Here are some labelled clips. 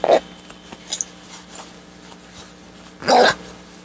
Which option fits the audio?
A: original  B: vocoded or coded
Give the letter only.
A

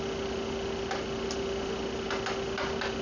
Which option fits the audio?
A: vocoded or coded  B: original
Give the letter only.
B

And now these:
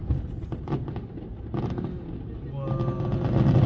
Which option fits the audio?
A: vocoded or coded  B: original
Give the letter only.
B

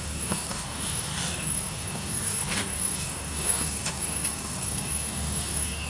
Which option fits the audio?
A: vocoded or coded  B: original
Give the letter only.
A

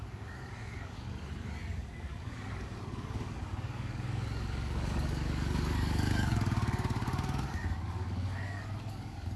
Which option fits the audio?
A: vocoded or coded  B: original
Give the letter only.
A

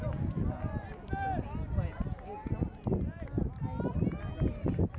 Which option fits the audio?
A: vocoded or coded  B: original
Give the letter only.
B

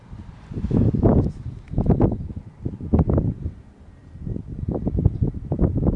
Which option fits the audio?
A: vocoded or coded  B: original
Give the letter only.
B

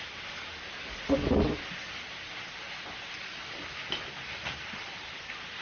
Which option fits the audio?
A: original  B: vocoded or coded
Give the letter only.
A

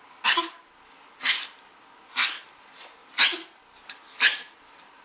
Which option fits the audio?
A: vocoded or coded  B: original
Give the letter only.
B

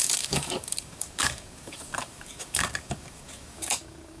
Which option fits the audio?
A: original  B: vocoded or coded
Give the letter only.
B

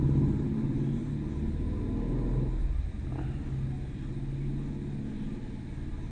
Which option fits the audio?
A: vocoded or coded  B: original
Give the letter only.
B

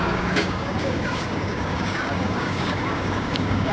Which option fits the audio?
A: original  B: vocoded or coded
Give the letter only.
B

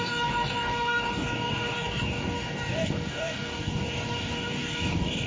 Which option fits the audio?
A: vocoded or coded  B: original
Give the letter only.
A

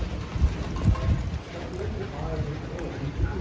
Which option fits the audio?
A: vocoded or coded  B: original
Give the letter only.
B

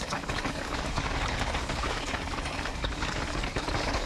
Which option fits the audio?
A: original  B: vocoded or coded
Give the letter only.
B